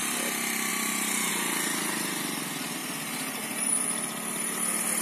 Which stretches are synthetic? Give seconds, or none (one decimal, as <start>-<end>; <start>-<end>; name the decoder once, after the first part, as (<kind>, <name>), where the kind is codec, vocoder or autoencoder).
0.7-1.3 (vocoder, BigVGAN v2); 2.8-3.7